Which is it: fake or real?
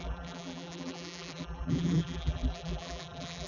fake